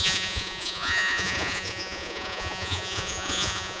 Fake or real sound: fake